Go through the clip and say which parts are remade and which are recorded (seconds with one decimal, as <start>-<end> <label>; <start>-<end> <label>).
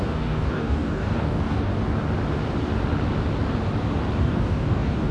0.0-1.7 remade; 1.7-4.2 recorded; 4.2-5.1 remade